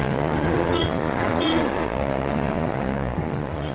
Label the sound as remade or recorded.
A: remade